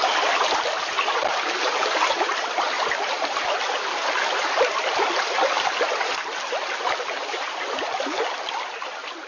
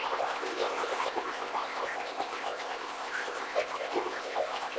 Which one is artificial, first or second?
second